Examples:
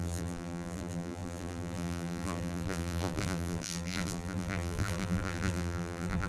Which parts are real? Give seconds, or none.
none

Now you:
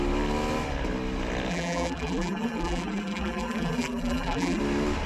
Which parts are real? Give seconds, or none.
0.0-1.5; 4.6-5.1

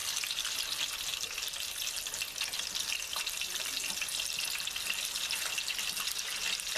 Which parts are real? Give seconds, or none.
0.6-6.8